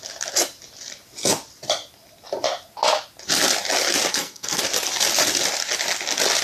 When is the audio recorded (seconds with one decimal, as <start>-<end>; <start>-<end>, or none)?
0.0-4.1; 4.6-6.4